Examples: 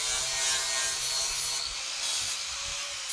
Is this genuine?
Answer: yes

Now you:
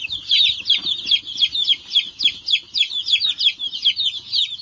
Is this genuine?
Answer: yes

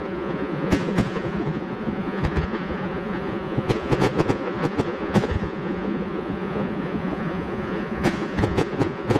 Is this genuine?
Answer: no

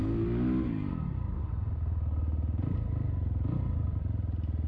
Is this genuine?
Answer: yes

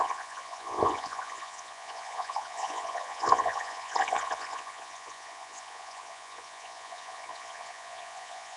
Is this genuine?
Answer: no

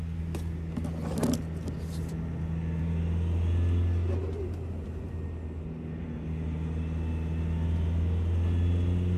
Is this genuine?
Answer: yes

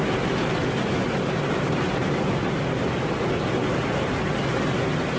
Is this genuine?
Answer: yes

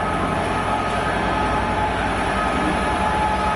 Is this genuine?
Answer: yes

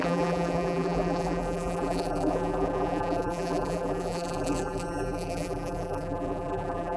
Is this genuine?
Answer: no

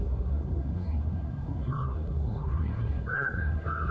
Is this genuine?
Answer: no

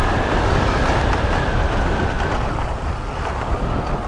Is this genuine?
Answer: yes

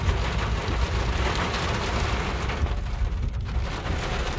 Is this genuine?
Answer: yes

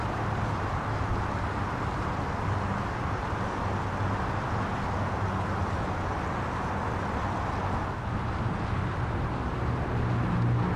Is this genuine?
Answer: yes